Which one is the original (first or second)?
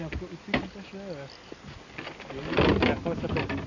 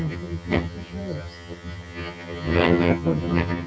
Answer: first